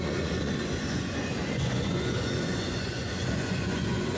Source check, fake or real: fake